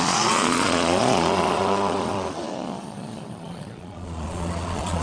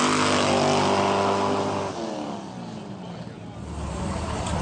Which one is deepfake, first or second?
first